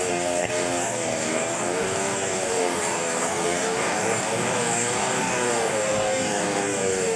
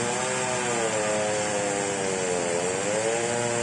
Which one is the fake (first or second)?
first